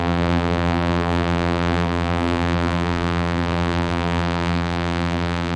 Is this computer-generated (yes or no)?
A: yes